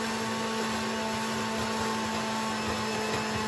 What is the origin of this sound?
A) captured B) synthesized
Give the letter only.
A